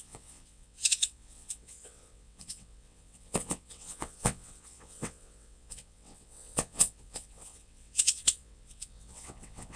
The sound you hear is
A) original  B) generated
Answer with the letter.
B